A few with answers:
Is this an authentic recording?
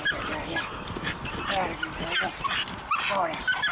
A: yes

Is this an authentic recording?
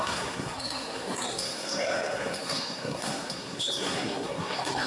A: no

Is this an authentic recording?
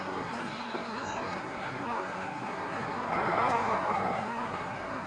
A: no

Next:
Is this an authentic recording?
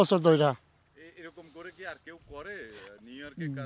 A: yes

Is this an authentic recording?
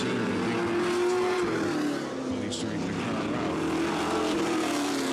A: yes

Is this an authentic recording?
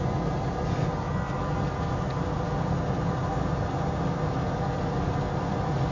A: yes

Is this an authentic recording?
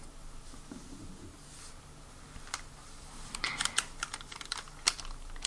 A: yes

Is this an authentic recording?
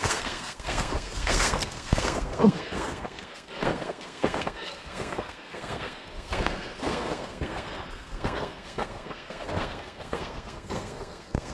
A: no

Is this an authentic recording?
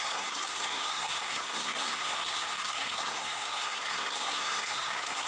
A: no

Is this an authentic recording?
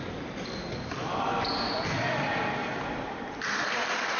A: yes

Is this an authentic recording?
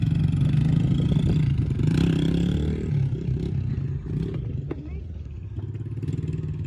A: yes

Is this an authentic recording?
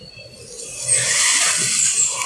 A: yes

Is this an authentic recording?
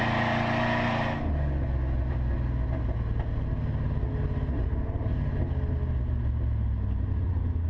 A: yes